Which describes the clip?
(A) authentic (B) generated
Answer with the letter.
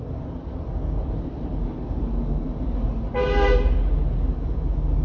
A